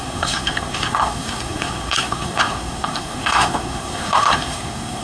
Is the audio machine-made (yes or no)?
yes